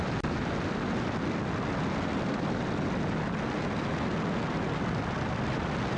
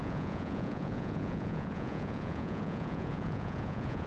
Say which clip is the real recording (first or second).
first